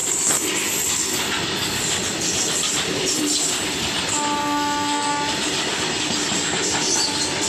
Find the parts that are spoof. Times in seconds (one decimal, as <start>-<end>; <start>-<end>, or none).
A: 4.4-5.1